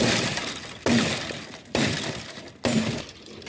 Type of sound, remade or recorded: recorded